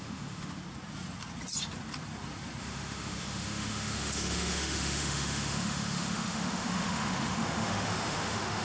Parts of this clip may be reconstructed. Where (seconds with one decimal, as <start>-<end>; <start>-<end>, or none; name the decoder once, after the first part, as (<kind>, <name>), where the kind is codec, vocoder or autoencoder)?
0.0-0.6 (autoencoder, DAC-VAE); 2.6-8.6